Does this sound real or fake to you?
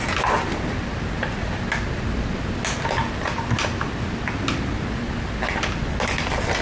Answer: real